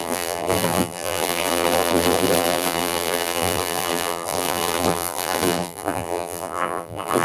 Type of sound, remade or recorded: remade